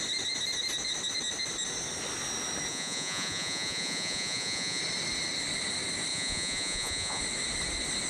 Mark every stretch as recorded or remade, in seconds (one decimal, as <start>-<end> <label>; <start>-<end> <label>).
0.0-2.7 recorded; 2.7-4.8 remade; 4.8-6.1 recorded; 6.1-7.2 remade; 7.2-8.1 recorded